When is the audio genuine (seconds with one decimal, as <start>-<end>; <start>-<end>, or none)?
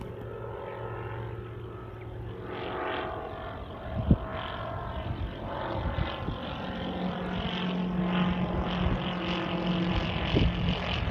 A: 0.0-11.1